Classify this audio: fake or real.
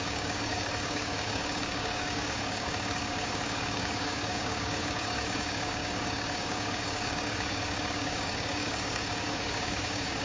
fake